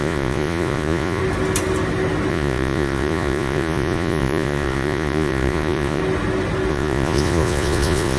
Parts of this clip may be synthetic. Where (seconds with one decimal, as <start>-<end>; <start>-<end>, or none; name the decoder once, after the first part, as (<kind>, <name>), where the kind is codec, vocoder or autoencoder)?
0.0-1.2 (vocoder, Vocos); 2.3-6.0; 6.7-8.2